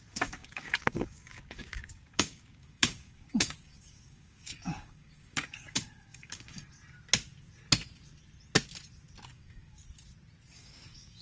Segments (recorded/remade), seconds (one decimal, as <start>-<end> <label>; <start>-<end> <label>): 0.0-6.6 remade; 6.6-9.3 recorded; 9.3-9.8 remade; 9.8-10.5 recorded; 10.5-11.2 remade